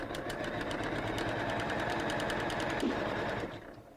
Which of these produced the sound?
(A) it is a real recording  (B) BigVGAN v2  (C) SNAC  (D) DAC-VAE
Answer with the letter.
A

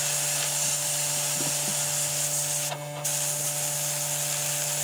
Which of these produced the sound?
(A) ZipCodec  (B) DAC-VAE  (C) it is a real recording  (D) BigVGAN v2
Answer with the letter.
C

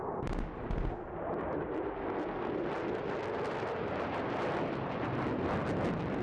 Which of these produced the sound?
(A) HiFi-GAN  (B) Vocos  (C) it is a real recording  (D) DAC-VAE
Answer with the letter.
C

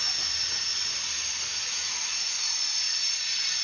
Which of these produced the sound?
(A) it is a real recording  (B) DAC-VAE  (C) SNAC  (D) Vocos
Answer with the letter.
A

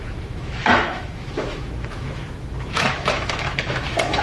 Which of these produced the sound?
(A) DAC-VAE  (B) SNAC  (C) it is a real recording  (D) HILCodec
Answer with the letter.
A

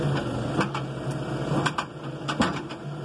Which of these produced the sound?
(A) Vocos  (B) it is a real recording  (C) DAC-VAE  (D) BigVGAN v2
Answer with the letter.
B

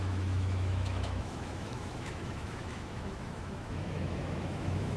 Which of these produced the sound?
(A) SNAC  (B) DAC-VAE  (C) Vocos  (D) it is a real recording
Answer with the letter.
B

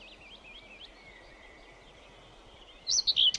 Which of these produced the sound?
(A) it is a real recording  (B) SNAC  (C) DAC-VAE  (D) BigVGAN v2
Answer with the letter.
A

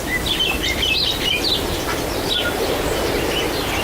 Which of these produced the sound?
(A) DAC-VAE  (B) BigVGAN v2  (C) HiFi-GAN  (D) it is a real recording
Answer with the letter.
D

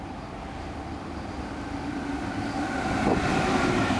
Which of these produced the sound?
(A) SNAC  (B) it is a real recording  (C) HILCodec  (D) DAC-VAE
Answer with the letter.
B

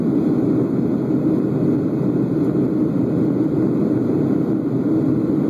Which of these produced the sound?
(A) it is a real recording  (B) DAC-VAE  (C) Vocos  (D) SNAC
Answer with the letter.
A